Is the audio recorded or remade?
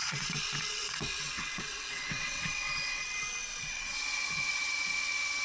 remade